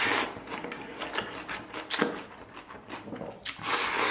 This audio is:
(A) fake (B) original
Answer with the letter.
B